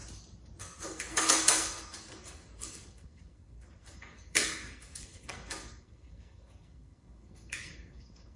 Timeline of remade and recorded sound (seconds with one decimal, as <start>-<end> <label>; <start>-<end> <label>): 0.0-0.6 recorded; 0.6-8.4 remade